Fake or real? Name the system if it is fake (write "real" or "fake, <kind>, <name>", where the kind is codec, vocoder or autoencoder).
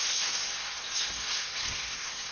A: fake, codec, SNAC